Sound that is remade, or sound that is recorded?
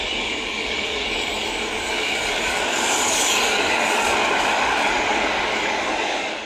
remade